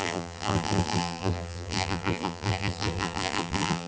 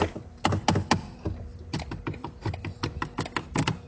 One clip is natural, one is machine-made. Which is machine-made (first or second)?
first